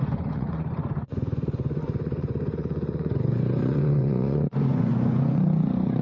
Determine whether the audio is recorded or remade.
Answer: remade